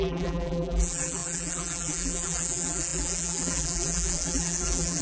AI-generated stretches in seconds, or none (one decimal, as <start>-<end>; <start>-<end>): 0.0-5.0